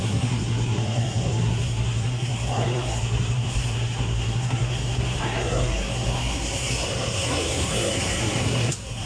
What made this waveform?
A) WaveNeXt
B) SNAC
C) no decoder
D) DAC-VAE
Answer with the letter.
B